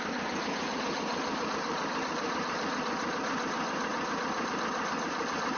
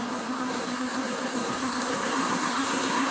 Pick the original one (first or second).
first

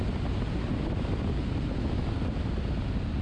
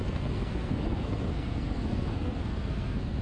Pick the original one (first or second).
first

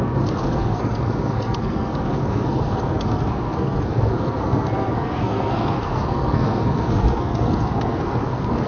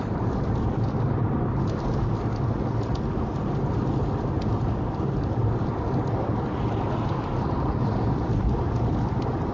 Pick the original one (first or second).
second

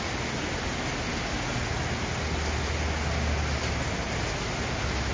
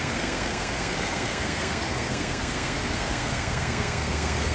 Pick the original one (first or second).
first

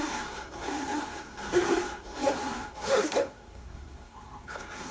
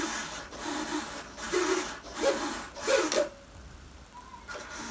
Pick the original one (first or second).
second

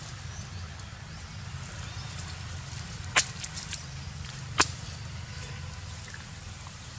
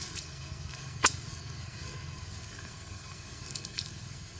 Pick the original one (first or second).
first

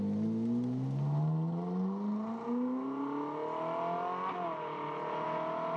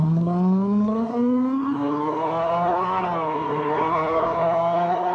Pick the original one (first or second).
first